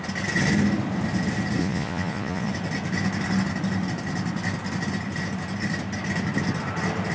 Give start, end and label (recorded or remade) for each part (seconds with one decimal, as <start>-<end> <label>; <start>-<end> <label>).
0.0-1.6 recorded; 1.6-2.5 remade; 2.5-7.1 recorded